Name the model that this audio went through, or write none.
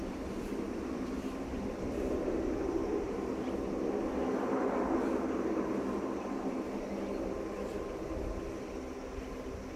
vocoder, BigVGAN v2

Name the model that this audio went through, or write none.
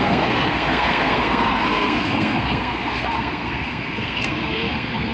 codec, SNAC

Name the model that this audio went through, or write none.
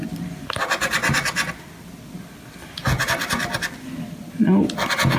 none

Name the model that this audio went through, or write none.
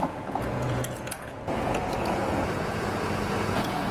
vocoder, Vocos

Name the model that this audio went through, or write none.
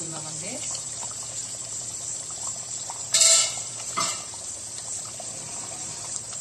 vocoder, BigVGAN v2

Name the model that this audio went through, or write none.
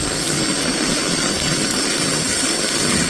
none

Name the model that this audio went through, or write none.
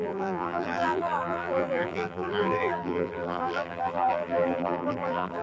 vocoder, BigVGAN v2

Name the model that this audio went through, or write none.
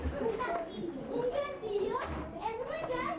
vocoder, BigVGAN v2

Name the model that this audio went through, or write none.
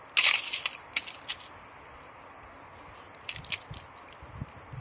none